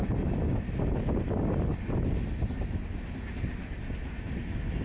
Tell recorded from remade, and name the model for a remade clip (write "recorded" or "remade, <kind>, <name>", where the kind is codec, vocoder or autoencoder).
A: recorded